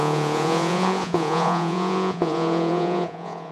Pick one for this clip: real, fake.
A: fake